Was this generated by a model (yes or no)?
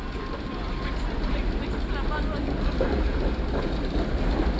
no